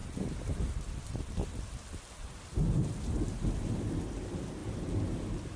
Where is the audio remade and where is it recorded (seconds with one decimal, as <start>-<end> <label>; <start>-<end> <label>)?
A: 0.0-5.6 recorded